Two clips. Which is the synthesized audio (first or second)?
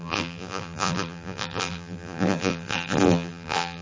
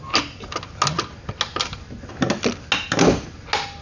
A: first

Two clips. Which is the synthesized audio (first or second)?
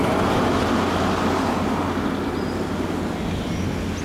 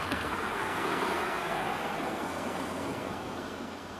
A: second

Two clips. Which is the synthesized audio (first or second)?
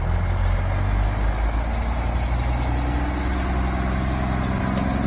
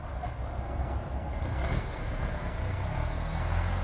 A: second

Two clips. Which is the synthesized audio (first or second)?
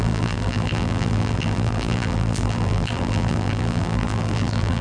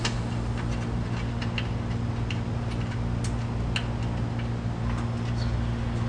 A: first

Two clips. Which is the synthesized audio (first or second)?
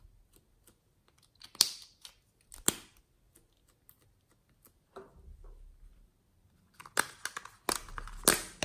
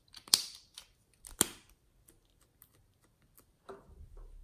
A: second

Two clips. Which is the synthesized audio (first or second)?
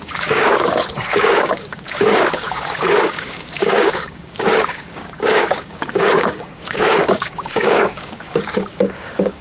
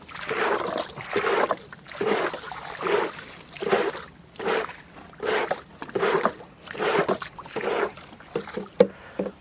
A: first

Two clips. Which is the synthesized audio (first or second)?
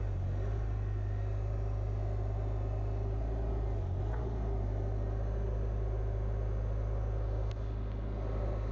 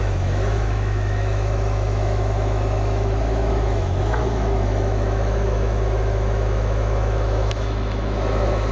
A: second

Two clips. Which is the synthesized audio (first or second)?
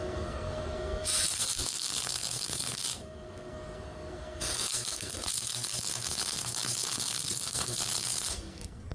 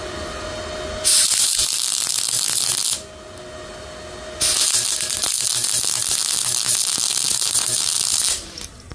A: first